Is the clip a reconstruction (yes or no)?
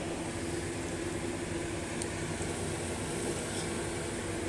no